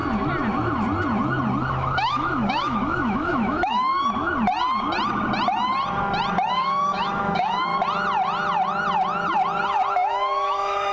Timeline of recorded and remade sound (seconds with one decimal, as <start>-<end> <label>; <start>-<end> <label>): 0.0-1.7 recorded; 1.7-3.9 remade; 3.9-6.5 recorded; 6.5-7.7 remade; 7.7-9.9 recorded; 9.9-10.9 remade